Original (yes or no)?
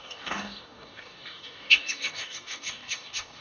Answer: no